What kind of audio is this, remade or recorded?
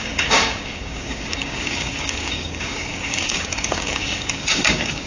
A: remade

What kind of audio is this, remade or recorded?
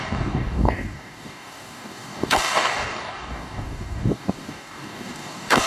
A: remade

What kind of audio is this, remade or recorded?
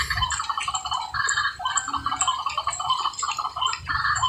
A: recorded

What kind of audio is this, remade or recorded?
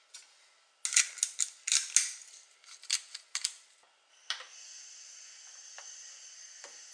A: recorded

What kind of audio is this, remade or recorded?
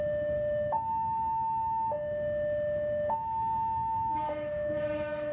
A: remade